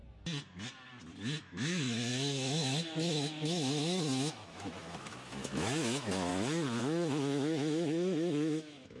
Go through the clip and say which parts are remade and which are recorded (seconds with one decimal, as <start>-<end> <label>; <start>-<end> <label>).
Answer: 0.0-1.4 recorded; 1.4-6.3 remade; 6.3-6.8 recorded; 6.8-9.0 remade